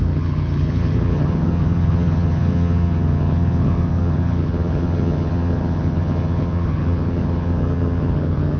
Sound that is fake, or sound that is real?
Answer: fake